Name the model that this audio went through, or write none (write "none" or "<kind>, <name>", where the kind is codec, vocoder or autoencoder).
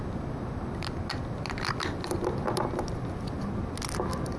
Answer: none